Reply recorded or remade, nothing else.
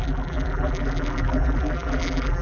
remade